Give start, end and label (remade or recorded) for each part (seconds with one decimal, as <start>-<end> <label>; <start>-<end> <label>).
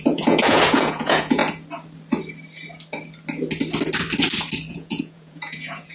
0.0-1.4 remade; 1.4-4.7 recorded; 4.7-5.9 remade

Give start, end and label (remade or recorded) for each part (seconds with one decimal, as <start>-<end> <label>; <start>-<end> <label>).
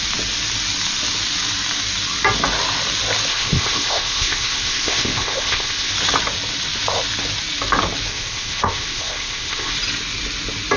0.0-3.3 recorded; 3.3-5.9 remade; 5.9-8.1 recorded; 8.1-9.7 remade; 9.7-10.8 recorded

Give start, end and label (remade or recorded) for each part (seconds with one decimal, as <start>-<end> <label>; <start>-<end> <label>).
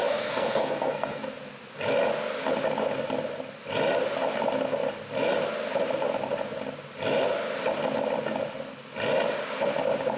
0.0-1.3 remade; 1.3-10.2 recorded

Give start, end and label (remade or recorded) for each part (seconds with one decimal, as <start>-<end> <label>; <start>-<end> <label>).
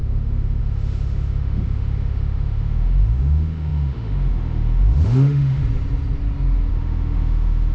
0.0-5.6 remade; 5.6-6.7 recorded; 6.7-7.7 remade